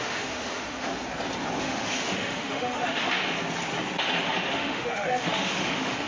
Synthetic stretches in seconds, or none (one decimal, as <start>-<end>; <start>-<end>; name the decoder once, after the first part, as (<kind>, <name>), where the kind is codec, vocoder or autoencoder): 0.0-0.9 (autoencoder, DAC-VAE); 1.6-3.2; 4.5-6.1